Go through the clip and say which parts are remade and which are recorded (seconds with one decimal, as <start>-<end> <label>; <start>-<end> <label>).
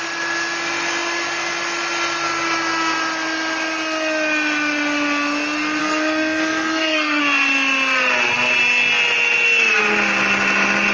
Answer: 0.0-5.8 recorded; 5.8-7.2 remade; 7.2-10.9 recorded